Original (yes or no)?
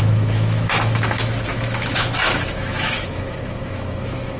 no